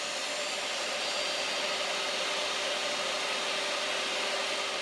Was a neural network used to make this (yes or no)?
no